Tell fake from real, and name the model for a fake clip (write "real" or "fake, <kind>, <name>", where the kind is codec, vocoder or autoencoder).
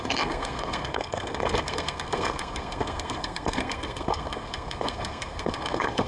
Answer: fake, codec, SNAC